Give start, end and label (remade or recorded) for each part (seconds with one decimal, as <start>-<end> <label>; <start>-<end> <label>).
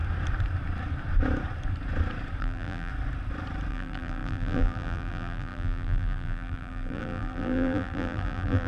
0.0-2.4 recorded; 2.4-2.9 remade; 2.9-3.7 recorded; 3.7-8.7 remade